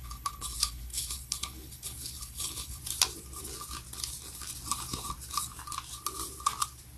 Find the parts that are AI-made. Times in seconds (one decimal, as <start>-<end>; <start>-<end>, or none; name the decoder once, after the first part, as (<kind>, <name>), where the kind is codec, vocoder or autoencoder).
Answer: 0.0-2.8 (codec, HILCodec)